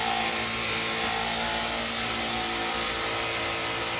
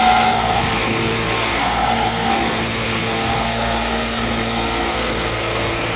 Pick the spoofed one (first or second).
second